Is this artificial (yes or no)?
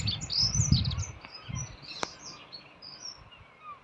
no